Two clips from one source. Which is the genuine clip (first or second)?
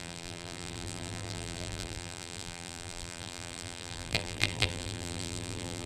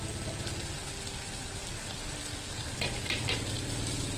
second